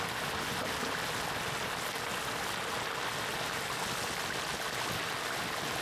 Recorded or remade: recorded